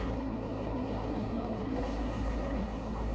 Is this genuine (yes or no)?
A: no